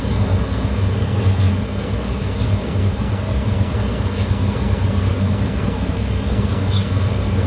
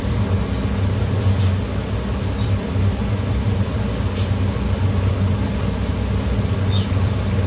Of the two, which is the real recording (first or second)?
second